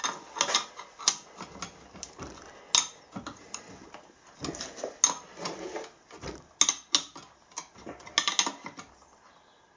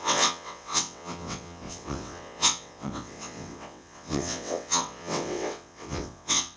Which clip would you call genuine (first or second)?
first